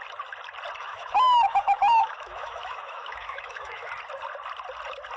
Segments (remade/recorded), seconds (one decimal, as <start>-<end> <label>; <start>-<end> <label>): 0.0-0.8 recorded; 0.8-3.9 remade; 3.9-5.2 recorded